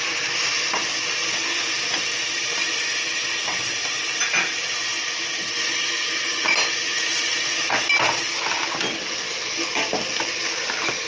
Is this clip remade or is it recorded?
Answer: recorded